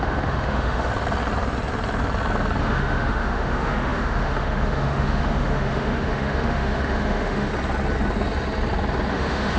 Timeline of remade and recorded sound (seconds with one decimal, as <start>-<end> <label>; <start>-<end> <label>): 0.0-0.9 remade; 0.9-2.6 recorded; 2.6-7.5 remade; 7.5-9.1 recorded; 9.1-9.6 remade